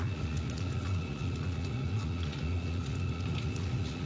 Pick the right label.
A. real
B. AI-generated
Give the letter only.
B